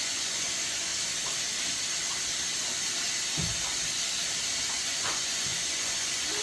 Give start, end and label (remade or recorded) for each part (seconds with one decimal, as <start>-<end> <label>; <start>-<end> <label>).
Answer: 0.0-0.9 remade; 0.9-4.7 recorded; 4.7-6.4 remade